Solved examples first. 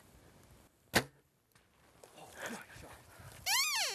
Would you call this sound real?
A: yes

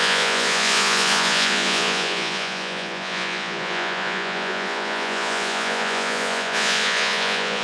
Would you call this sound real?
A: no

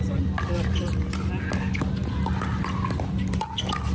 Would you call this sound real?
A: yes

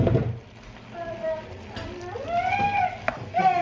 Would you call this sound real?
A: yes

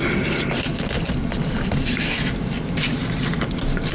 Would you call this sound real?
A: yes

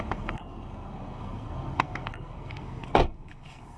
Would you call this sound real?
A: no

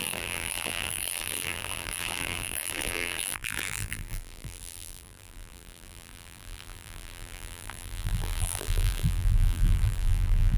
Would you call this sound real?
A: no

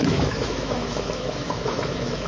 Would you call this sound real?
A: no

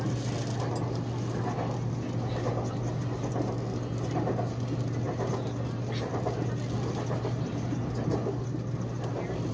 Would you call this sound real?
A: yes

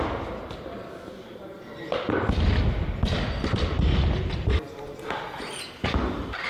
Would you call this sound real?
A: yes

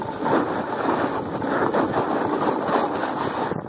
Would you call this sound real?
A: yes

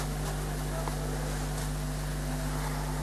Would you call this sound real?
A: yes